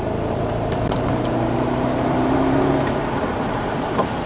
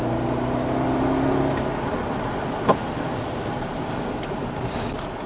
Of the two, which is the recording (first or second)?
second